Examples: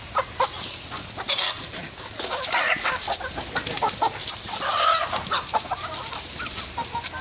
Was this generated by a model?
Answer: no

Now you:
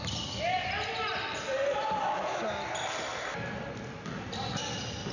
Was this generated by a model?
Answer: no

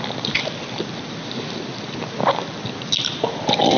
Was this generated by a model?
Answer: no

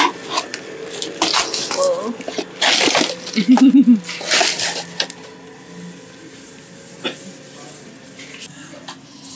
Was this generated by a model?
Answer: no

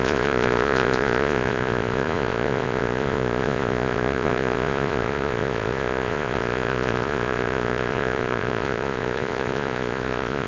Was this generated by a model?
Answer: yes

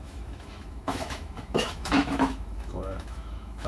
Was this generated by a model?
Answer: yes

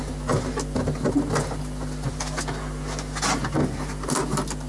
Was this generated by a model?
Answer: no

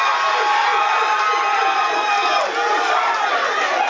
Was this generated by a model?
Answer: no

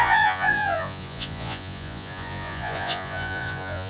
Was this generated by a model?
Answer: yes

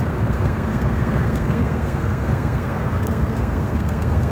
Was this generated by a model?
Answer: yes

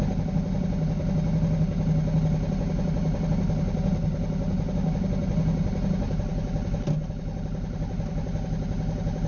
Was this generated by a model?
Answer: no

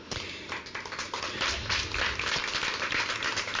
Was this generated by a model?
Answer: no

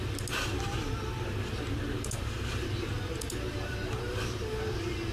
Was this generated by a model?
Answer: no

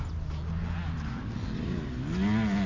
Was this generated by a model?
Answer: no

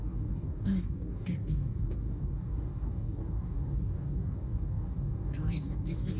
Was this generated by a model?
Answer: yes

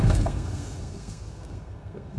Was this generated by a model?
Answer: yes